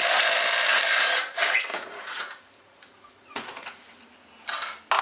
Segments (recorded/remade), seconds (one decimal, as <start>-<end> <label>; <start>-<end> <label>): 0.0-1.7 recorded; 1.7-4.1 remade; 4.1-5.0 recorded